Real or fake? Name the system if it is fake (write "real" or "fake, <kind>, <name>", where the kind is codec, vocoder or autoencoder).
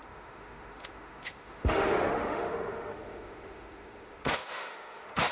fake, autoencoder, DAC-VAE